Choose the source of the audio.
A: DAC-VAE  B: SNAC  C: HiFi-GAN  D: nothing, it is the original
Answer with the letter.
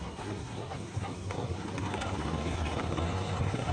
B